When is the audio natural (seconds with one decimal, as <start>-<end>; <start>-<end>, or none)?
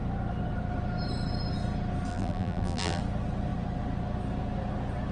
0.0-2.1; 3.0-5.1